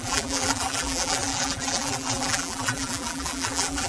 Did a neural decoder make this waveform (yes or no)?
yes